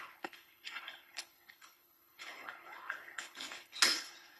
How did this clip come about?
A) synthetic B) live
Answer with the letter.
A